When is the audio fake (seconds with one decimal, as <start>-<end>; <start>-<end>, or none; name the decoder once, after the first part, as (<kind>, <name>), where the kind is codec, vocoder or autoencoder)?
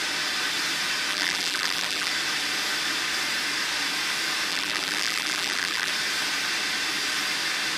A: 1.1-2.1 (vocoder, BigVGAN v2); 4.5-5.9